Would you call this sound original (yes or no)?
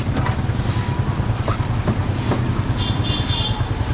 yes